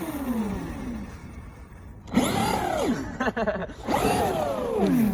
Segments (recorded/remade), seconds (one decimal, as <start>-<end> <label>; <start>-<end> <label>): 0.0-1.2 recorded; 1.2-1.7 remade; 1.7-2.4 recorded; 2.4-3.2 remade; 3.2-3.6 recorded; 3.6-4.3 remade; 4.3-5.1 recorded